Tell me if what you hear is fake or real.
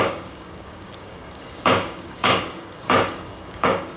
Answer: fake